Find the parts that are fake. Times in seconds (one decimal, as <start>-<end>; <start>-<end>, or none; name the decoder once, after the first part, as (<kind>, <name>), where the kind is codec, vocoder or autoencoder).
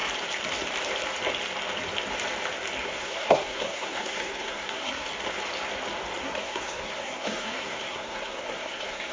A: 2.8-5.1 (codec, SNAC); 6.2-9.1